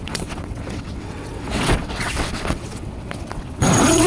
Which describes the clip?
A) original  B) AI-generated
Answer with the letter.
B